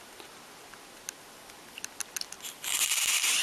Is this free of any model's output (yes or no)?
yes